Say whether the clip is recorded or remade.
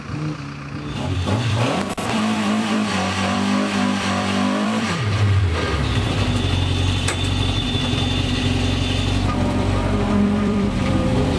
remade